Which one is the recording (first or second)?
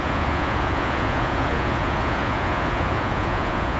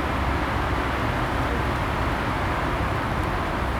second